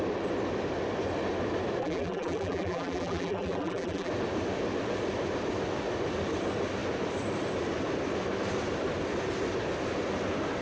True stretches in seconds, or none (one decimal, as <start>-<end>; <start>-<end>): 0.0-1.8; 4.1-10.6